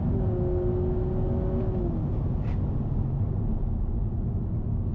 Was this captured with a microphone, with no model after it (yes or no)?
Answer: yes